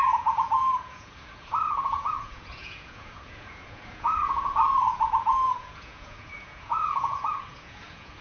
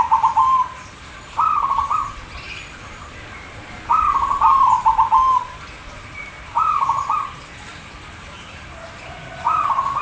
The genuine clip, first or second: second